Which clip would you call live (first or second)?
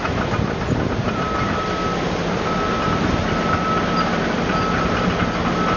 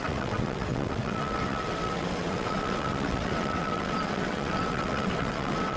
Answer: first